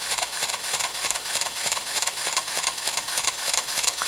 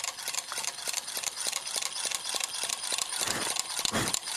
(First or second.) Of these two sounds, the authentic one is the second